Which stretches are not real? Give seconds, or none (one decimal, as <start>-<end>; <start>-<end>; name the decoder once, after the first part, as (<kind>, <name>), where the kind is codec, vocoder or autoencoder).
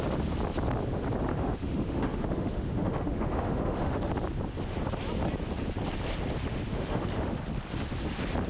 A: 1.3-4.1 (autoencoder, DAC-VAE); 6.7-7.4